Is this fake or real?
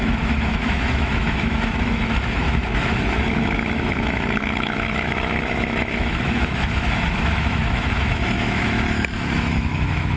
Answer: fake